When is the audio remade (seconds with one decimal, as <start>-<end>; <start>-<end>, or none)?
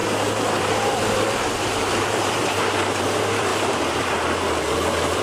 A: 0.0-5.2